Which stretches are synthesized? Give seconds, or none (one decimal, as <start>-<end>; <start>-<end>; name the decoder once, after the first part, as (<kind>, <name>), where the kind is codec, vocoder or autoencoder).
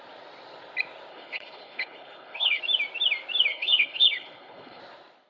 1.1-2.6 (codec, HILCodec); 3.5-4.8